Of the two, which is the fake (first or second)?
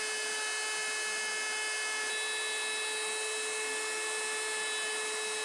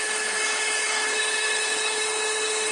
second